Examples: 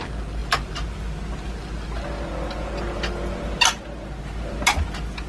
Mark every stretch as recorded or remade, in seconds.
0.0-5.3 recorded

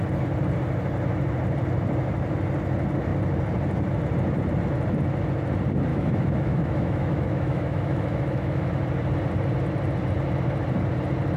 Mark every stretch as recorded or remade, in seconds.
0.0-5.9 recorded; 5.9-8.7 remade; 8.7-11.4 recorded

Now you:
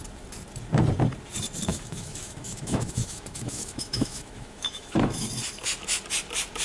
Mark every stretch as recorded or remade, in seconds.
0.0-1.7 recorded; 1.7-5.3 remade; 5.3-6.6 recorded